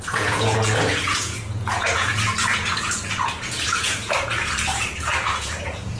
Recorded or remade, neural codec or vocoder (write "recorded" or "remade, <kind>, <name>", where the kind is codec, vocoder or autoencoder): remade, vocoder, Vocos